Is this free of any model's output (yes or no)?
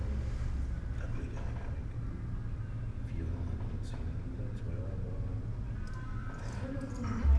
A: yes